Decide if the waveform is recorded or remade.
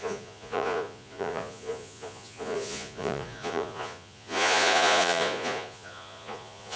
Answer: remade